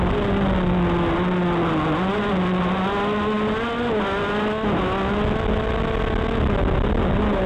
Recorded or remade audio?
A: recorded